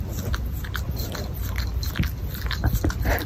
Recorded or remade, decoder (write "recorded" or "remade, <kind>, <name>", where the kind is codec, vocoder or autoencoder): recorded